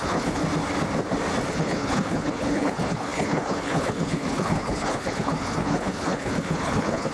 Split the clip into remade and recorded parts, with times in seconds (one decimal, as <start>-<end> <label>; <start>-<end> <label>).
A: 0.0-0.4 remade; 0.4-1.5 recorded; 1.5-7.1 remade